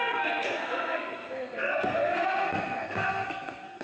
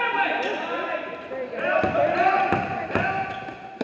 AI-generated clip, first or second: first